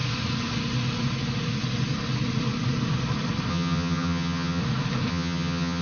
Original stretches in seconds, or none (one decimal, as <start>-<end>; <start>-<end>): 0.0-3.5; 4.6-5.1